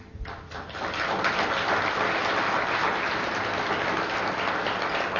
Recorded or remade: recorded